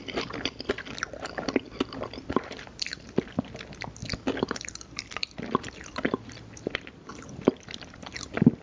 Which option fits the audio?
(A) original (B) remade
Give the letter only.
B